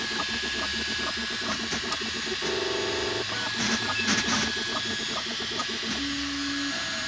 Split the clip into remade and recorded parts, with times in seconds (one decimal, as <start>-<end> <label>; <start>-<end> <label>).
0.0-7.1 recorded